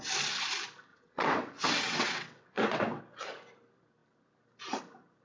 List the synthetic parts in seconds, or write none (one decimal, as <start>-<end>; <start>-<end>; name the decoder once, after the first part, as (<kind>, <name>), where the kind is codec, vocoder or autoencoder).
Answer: 0.9-3.0 (vocoder, WaveNeXt)